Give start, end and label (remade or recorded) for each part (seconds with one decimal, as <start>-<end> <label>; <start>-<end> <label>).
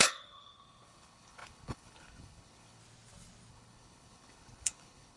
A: 0.0-2.8 remade; 2.8-3.5 recorded; 3.5-5.2 remade